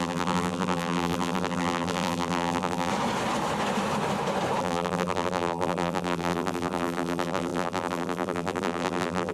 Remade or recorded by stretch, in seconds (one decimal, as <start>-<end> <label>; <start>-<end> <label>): 0.0-2.9 remade; 2.9-4.6 recorded; 4.6-9.3 remade